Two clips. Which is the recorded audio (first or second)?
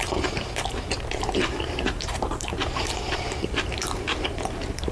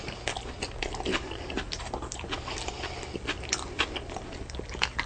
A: second